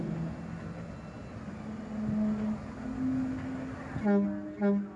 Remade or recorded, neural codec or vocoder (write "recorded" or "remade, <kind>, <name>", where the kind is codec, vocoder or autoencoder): recorded